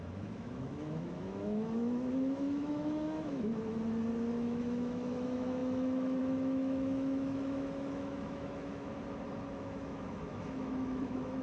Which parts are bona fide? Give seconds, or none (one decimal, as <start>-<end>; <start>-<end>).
3.5-4.3; 8.9-9.5